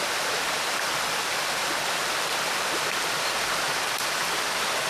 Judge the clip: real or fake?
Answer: fake